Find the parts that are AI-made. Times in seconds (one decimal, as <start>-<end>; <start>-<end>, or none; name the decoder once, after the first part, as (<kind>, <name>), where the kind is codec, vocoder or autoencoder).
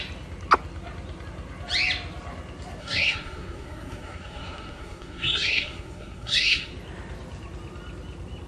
2.8-6.7 (codec, SNAC)